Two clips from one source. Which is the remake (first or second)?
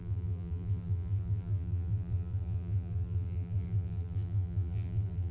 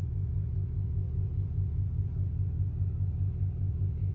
first